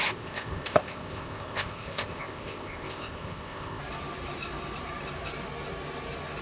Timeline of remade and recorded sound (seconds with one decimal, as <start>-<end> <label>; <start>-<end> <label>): 0.0-3.8 remade; 3.8-6.4 recorded